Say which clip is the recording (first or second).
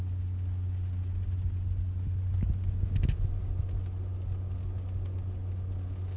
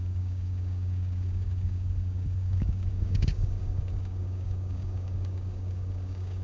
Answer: first